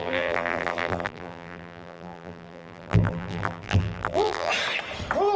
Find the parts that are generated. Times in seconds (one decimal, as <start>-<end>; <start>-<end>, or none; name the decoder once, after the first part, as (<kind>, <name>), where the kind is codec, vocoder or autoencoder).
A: 0.0-4.5 (vocoder, BigVGAN v2)